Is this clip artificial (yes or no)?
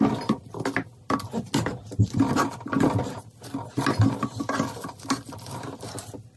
no